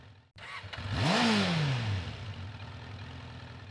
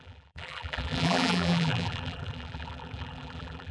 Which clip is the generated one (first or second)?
second